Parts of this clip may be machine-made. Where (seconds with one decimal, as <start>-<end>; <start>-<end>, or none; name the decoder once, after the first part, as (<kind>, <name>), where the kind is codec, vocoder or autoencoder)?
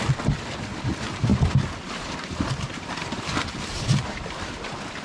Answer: 1.3-4.3 (vocoder, BigVGAN v2)